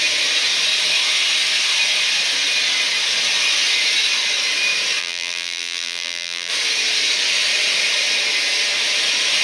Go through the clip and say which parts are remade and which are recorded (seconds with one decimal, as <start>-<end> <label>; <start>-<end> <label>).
0.0-5.0 recorded; 5.0-6.5 remade; 6.5-9.4 recorded